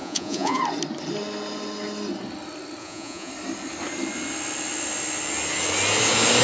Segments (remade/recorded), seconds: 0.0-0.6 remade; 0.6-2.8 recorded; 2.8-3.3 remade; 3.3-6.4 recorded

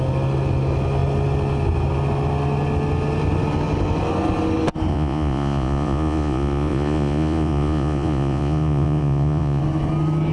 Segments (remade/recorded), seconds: 0.0-4.9 recorded; 4.9-9.6 remade; 9.6-10.3 recorded

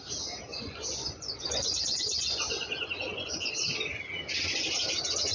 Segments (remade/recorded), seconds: 0.0-0.5 recorded; 0.5-3.5 remade; 3.5-5.3 recorded

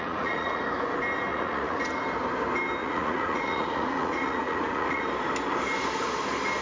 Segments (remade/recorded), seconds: 0.0-0.6 remade; 0.6-1.3 recorded; 1.3-2.0 remade; 2.0-2.8 recorded; 2.8-5.0 remade; 5.0-6.6 recorded

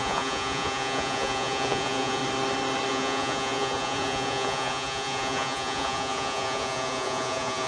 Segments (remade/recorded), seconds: 0.0-2.2 remade; 2.2-2.9 recorded; 2.9-7.7 remade

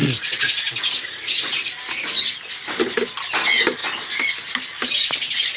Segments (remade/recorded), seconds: 0.0-1.5 remade; 1.5-5.6 recorded